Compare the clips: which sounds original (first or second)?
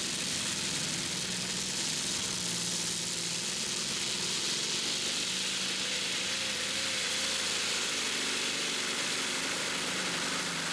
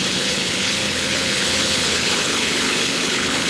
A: first